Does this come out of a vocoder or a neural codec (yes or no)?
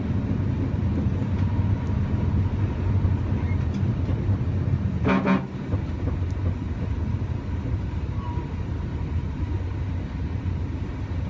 no